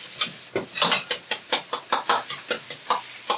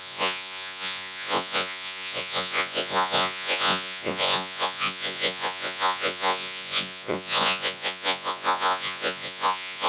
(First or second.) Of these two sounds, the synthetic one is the second